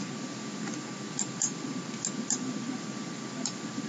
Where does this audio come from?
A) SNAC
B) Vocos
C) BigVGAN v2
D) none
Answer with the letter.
D